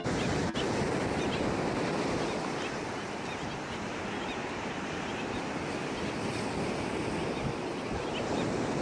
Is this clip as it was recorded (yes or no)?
yes